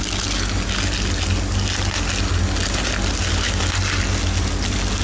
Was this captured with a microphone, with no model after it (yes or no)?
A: yes